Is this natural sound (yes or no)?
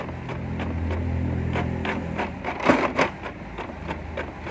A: yes